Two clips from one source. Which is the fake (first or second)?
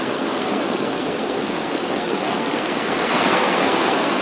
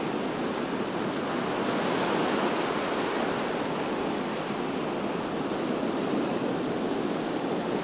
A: first